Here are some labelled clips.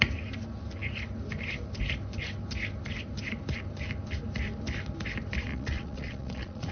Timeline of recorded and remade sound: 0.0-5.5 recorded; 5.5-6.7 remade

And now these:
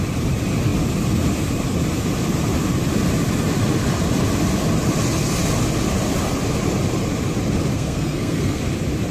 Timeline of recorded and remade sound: 0.0-7.7 recorded; 7.7-8.6 remade; 8.6-9.1 recorded

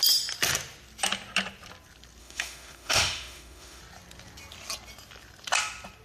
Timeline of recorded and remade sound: 0.0-2.2 recorded; 2.2-3.8 remade; 3.8-6.0 recorded

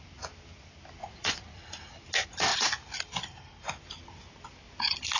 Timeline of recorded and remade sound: 0.0-1.0 recorded; 1.0-1.7 remade; 1.7-5.2 recorded

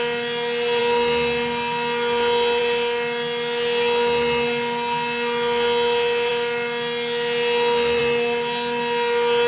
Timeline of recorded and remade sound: 0.0-9.5 recorded

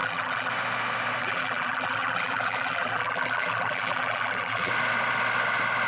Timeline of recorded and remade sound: 0.0-0.5 remade; 0.5-1.2 recorded; 1.2-4.7 remade; 4.7-5.9 recorded

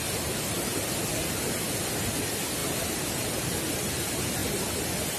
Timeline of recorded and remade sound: 0.0-5.2 recorded